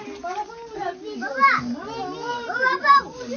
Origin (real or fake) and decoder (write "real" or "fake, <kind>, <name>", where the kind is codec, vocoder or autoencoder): real